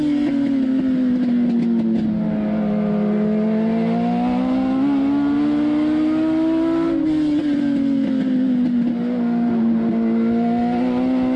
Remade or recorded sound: recorded